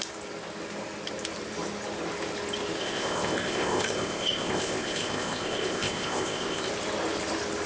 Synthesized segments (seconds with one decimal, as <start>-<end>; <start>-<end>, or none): 2.8-6.7